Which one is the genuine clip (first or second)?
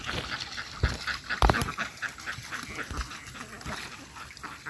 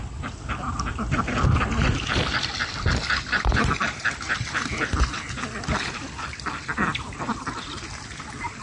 first